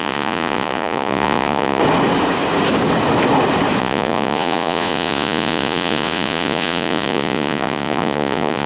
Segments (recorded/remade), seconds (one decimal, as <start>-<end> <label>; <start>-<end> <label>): 0.0-1.8 remade; 1.8-3.8 recorded; 3.8-8.7 remade